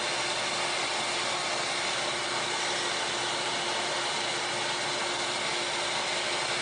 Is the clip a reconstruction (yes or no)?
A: no